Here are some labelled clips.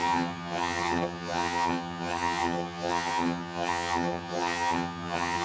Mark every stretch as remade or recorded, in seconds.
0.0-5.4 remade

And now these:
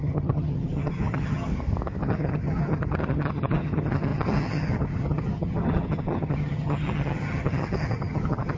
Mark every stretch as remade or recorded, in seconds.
0.0-1.5 remade; 1.5-2.0 recorded; 2.0-8.6 remade